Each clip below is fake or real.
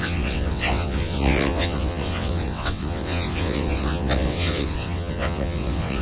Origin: fake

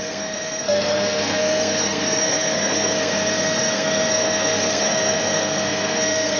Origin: fake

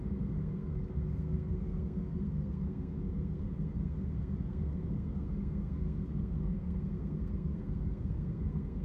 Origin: fake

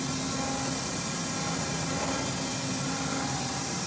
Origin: real